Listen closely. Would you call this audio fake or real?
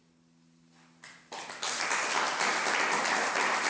real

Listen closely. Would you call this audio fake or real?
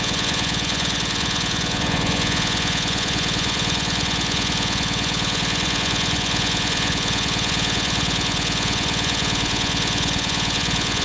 fake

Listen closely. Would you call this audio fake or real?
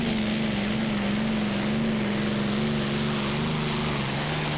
real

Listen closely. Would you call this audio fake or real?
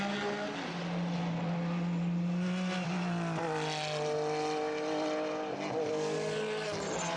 real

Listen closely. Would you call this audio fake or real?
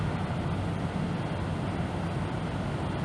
real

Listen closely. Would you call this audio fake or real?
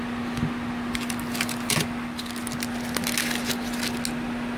real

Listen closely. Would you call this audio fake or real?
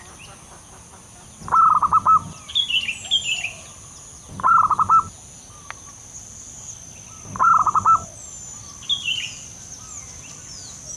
real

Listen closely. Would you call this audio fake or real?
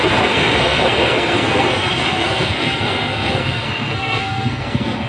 fake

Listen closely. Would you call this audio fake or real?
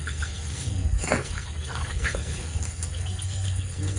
fake